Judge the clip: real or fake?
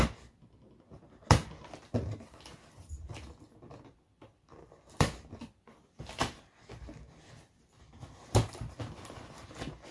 real